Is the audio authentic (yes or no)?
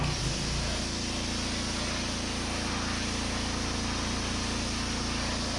yes